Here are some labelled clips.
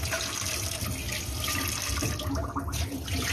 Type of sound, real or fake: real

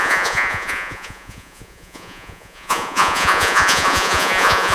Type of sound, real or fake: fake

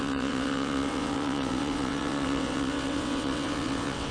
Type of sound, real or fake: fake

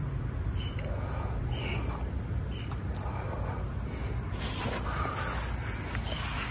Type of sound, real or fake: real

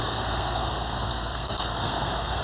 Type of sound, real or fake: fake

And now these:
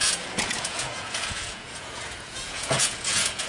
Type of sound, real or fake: fake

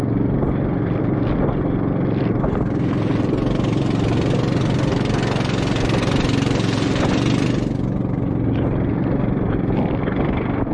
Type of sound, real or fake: real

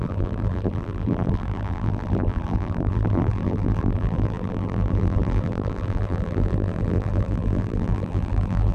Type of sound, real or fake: fake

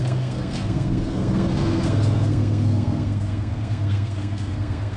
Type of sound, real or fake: fake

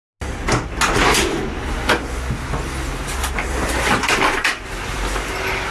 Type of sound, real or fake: real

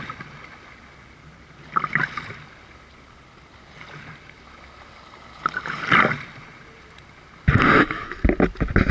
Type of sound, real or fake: real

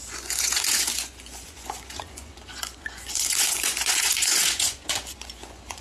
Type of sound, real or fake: fake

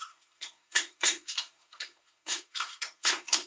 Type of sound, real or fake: fake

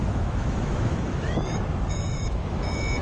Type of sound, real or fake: fake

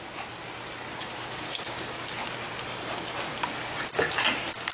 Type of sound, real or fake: real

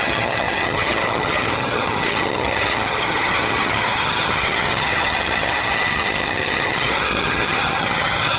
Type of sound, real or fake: fake